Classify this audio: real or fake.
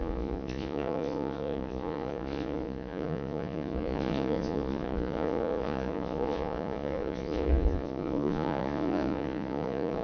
fake